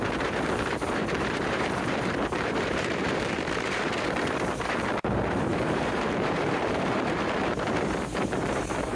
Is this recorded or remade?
remade